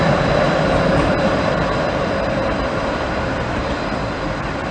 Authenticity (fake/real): fake